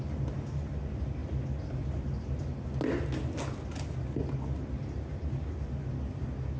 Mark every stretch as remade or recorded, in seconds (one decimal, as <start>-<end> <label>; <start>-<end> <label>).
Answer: 0.0-6.6 recorded